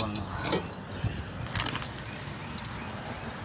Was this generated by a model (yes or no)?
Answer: no